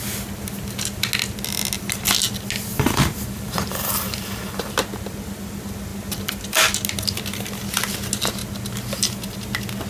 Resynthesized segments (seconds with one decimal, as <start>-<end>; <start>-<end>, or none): 2.7-4.7